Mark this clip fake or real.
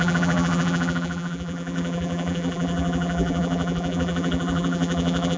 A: fake